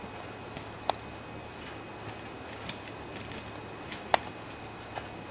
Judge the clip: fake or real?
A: real